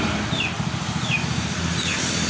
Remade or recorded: recorded